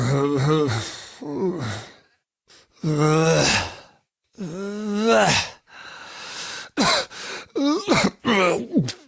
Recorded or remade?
recorded